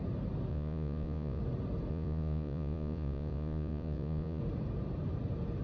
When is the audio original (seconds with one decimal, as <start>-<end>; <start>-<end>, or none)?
0.0-0.5; 1.4-1.9; 4.4-5.6